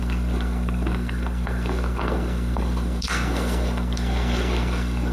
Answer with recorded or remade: remade